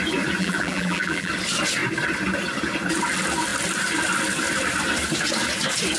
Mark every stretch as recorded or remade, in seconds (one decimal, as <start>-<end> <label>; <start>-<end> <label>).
0.0-0.4 recorded; 0.4-1.3 remade; 1.3-6.0 recorded